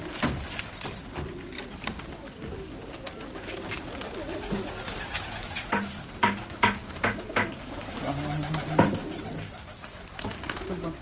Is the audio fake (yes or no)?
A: no